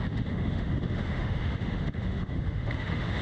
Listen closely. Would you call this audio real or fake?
fake